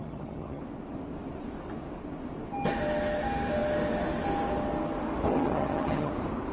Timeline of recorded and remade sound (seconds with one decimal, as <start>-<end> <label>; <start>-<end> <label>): 0.0-0.6 remade; 0.6-5.3 recorded; 5.3-6.1 remade; 6.1-6.5 recorded